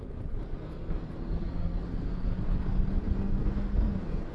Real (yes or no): no